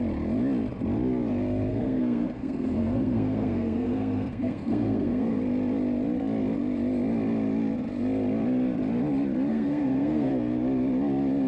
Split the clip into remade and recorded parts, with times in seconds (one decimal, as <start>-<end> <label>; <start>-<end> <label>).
0.0-1.7 recorded; 1.7-5.4 remade; 5.4-9.5 recorded; 9.5-10.3 remade; 10.3-11.5 recorded